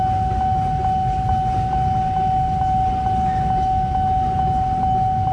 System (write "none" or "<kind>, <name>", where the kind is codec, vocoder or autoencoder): none